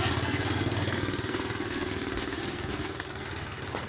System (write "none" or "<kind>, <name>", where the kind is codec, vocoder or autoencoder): codec, SNAC